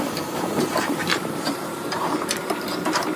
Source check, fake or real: fake